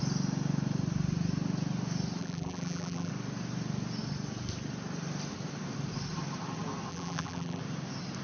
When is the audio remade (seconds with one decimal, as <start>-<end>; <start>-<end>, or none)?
2.2-3.1; 6.9-7.6